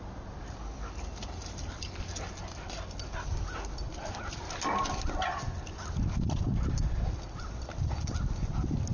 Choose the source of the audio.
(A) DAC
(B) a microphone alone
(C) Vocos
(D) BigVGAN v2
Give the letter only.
B